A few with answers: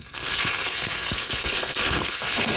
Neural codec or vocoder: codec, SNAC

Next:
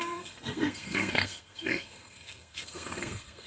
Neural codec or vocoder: codec, SNAC